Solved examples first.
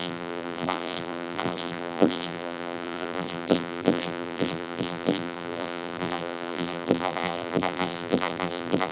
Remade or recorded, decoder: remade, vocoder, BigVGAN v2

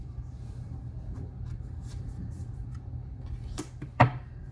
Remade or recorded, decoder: remade, vocoder, BigVGAN v2